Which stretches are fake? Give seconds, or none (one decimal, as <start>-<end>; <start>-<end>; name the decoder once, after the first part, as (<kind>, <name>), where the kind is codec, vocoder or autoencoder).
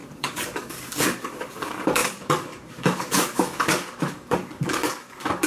0.0-5.5 (codec, DAC)